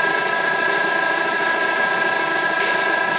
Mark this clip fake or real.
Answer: fake